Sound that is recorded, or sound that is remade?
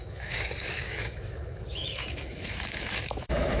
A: remade